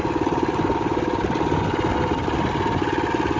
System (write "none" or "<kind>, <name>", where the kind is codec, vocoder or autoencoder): none